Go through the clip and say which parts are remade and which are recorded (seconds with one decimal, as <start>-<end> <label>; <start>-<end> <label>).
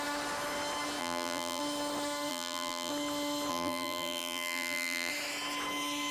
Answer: 0.0-1.0 recorded; 1.0-1.6 remade; 1.6-2.3 recorded; 2.3-2.9 remade; 2.9-3.5 recorded; 3.5-5.1 remade; 5.1-6.1 recorded